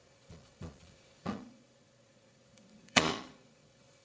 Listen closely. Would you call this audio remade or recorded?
remade